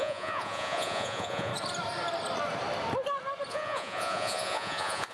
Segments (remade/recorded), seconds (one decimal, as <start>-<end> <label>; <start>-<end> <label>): 0.0-1.5 remade; 1.5-3.5 recorded; 3.5-5.1 remade